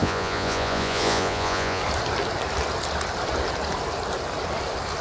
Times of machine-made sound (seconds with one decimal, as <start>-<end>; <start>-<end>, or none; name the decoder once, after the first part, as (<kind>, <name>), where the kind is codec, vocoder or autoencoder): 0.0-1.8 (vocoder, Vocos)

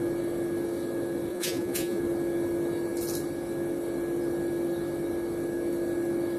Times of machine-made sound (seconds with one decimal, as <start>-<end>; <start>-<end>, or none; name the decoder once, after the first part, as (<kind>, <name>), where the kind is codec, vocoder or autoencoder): 1.3-2.0 (vocoder, Vocos)

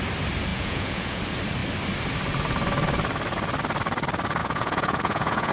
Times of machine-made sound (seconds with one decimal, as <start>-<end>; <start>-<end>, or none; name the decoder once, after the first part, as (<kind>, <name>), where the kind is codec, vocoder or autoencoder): 0.5-1.2 (vocoder, Vocos); 4.4-5.5

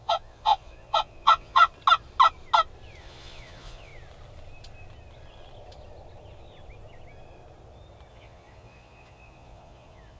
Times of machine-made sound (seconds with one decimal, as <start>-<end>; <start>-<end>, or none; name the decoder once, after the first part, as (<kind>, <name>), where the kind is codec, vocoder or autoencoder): 0.0-1.7 (vocoder, Vocos); 3.0-3.9; 8.1-10.2